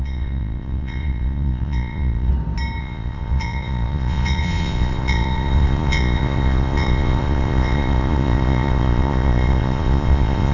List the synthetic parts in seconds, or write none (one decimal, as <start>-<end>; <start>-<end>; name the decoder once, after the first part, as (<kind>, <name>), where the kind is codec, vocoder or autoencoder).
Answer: 0.0-2.3 (vocoder, Vocos); 2.8-10.5